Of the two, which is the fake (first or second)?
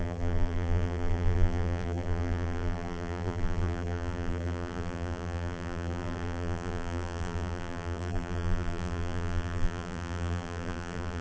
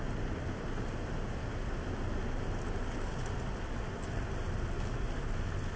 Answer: first